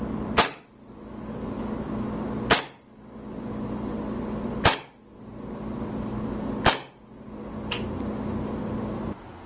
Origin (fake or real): real